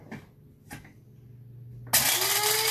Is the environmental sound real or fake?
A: real